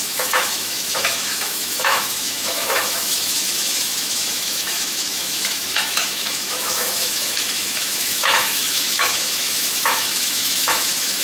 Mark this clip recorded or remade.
remade